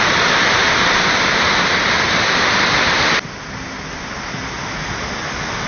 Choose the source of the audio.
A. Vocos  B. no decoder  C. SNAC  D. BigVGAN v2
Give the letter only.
B